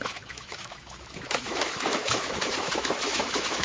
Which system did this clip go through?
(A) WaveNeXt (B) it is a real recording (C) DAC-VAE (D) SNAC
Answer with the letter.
C